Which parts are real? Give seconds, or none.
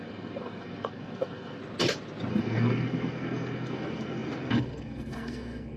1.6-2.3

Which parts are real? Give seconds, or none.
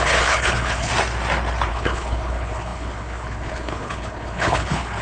0.9-1.7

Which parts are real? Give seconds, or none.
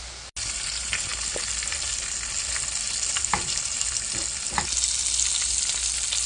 0.0-6.3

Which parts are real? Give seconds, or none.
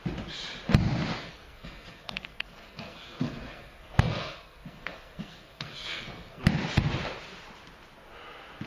0.0-1.2; 6.4-8.7